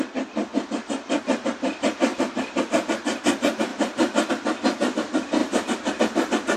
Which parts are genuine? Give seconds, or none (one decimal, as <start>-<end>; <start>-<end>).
0.0-2.1; 2.6-3.7; 4.3-5.4; 6.0-6.6